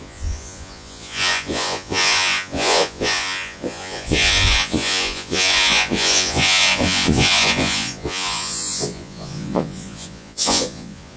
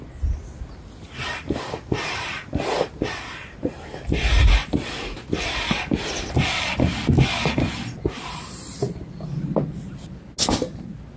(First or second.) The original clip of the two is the second